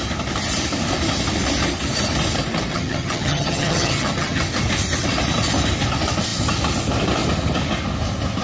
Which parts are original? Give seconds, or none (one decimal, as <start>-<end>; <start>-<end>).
0.0-2.7; 4.4-8.4

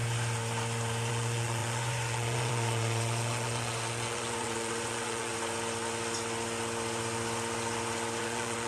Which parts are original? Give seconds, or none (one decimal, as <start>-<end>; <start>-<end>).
0.0-1.1; 5.3-8.2

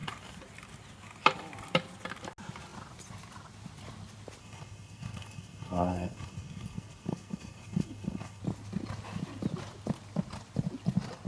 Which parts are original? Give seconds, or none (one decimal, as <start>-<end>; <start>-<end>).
0.0-4.4; 8.4-11.3

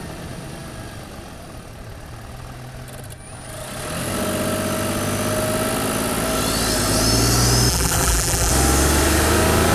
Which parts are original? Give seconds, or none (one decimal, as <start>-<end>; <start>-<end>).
0.0-7.7; 8.5-9.7

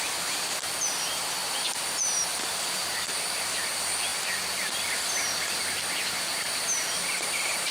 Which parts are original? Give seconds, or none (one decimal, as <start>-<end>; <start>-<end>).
none

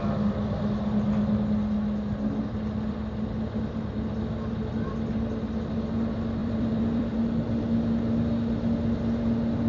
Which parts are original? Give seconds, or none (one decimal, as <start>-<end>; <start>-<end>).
0.0-6.4; 7.2-9.7